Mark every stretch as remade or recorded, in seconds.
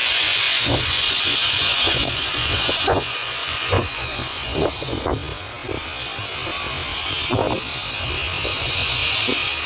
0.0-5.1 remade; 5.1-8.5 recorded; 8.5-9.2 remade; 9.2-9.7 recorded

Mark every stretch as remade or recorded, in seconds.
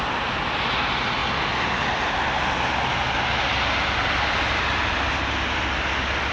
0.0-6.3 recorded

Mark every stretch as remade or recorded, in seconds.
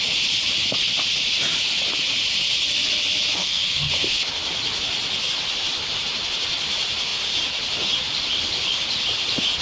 0.0-3.3 recorded; 3.3-3.9 remade; 3.9-9.6 recorded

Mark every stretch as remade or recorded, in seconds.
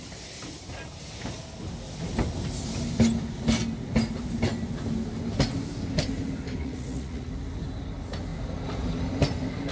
0.0-6.6 recorded; 6.6-7.3 remade; 7.3-9.7 recorded